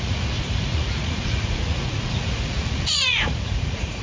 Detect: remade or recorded remade